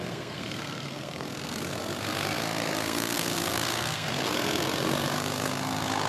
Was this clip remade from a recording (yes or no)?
yes